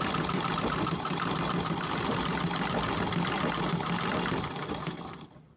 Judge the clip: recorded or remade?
recorded